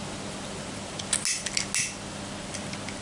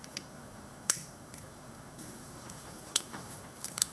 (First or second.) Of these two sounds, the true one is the first